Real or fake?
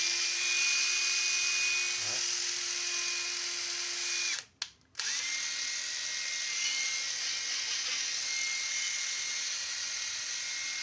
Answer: real